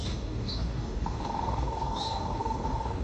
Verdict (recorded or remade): remade